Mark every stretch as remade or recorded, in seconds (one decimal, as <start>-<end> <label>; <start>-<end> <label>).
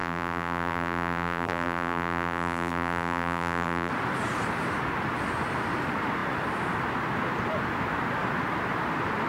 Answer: 0.0-3.9 remade; 3.9-9.3 recorded